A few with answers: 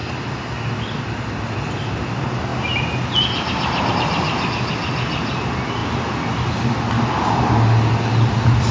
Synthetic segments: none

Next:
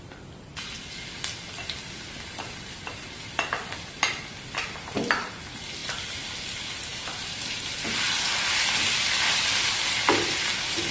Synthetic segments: 5.8-6.3; 6.9-7.5

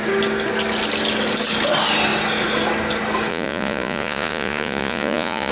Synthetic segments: 3.3-5.5

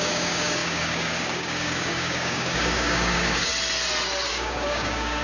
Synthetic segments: 0.0-3.5; 4.3-5.2

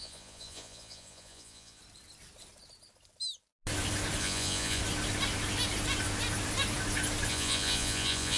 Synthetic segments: 0.0-1.8; 4.2-4.8; 7.3-8.4

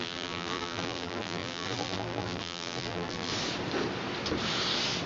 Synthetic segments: 0.0-3.3

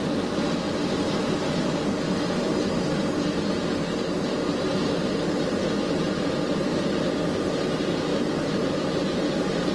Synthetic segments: 8.1-9.0